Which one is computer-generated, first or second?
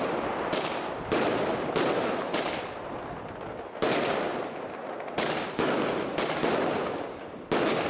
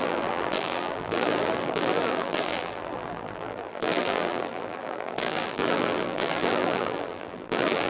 second